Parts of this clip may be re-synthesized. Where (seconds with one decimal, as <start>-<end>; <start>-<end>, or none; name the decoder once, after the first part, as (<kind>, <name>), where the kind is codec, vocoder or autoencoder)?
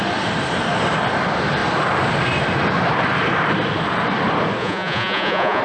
4.6-5.6 (vocoder, Vocos)